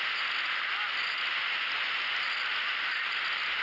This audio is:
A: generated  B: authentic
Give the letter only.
B